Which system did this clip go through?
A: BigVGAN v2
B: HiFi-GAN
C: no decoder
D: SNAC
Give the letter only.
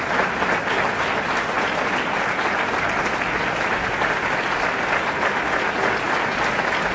C